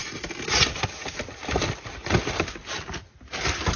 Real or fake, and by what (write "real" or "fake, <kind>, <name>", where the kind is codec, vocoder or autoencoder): real